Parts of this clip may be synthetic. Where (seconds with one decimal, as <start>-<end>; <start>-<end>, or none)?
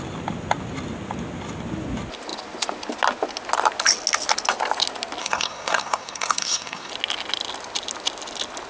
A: 5.2-6.9